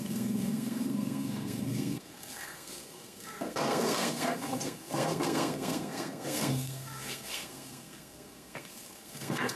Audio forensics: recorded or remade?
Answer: remade